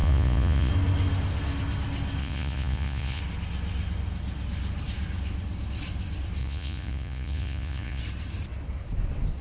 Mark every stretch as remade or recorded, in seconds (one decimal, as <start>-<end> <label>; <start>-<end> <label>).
0.0-0.7 remade; 0.7-2.2 recorded; 2.2-3.2 remade; 3.2-6.4 recorded; 6.4-8.0 remade; 8.0-9.4 recorded